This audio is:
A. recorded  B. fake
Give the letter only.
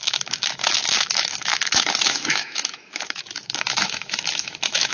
B